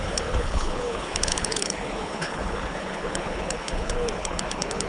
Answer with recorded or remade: remade